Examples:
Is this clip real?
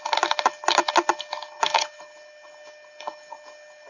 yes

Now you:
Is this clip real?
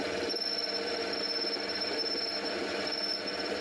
yes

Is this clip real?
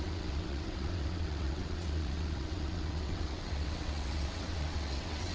no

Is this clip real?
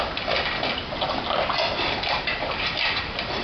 yes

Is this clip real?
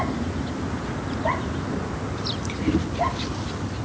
yes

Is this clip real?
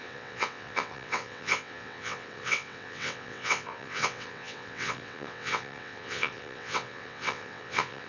no